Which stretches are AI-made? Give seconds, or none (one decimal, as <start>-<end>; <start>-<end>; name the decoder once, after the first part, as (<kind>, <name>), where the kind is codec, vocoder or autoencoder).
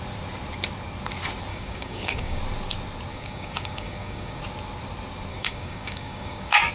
1.5-2.4 (codec, DAC); 3.1-4.4; 5.3-6.7